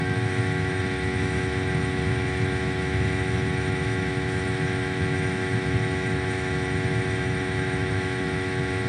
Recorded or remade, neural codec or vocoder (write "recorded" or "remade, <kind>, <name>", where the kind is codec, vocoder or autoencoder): remade, autoencoder, DAC-VAE